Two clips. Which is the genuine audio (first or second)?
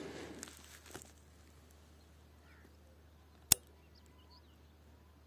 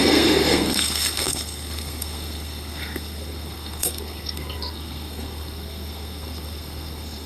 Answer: first